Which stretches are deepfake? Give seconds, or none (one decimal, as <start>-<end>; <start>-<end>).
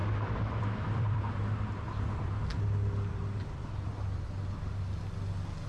0.0-1.2